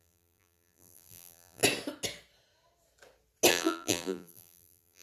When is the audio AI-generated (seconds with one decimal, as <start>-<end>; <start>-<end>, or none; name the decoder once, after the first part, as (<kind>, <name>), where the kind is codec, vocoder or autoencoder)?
0.0-1.6 (vocoder, BigVGAN v2); 3.5-5.0